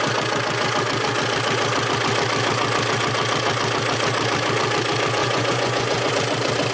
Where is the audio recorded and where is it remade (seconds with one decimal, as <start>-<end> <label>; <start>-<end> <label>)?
0.0-5.2 recorded; 5.2-6.1 remade; 6.1-6.7 recorded